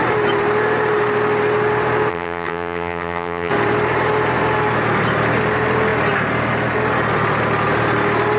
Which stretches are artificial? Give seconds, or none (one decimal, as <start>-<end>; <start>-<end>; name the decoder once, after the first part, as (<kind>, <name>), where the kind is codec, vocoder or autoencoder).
2.1-3.5 (vocoder, HiFi-GAN)